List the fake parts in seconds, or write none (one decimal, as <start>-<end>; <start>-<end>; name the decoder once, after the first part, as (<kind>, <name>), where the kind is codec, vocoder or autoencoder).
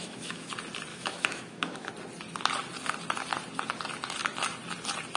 0.0-0.5 (autoencoder, DAC-VAE); 0.9-1.9